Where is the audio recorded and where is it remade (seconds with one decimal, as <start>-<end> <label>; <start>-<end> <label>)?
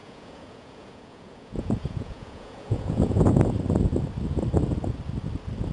0.0-3.4 remade; 3.4-5.7 recorded